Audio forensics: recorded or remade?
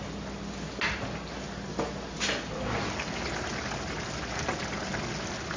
recorded